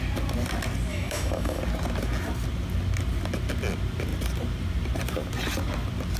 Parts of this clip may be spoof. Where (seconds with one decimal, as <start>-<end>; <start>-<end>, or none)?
0.9-1.6